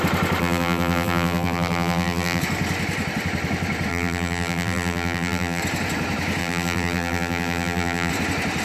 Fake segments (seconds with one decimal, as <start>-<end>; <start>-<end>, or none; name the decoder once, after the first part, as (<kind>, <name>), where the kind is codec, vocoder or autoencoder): 0.4-2.4 (vocoder, BigVGAN v2); 3.9-5.6; 6.4-8.1